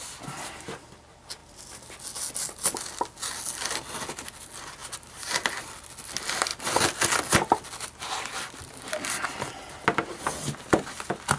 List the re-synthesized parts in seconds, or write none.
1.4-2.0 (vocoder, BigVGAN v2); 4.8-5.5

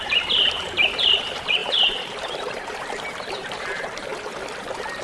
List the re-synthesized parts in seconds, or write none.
0.0-4.1 (vocoder, BigVGAN v2); 4.6-5.0

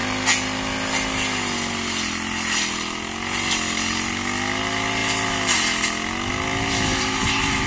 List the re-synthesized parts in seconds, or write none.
6.9-7.7 (vocoder, BigVGAN v2)